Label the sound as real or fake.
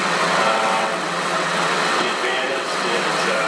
fake